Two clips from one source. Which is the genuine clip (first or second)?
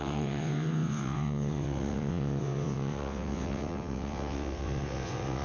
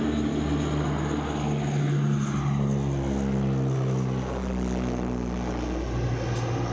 second